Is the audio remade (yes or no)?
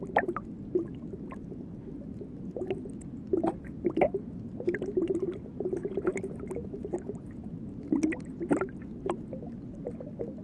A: no